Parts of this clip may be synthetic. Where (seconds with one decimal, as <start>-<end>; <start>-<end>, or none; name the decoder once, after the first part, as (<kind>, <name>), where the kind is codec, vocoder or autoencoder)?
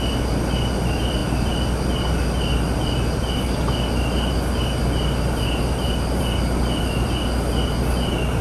none